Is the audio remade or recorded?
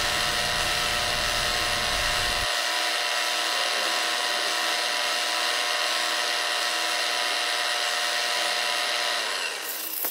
recorded